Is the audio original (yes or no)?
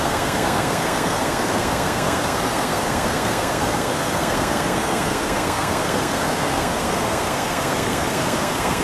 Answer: no